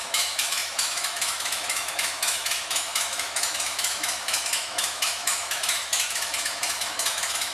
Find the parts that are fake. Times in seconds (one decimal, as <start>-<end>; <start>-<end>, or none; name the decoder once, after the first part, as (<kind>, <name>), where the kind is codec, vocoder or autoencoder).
0.0-7.5 (autoencoder, DAC-VAE)